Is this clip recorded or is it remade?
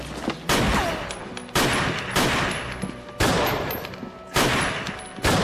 recorded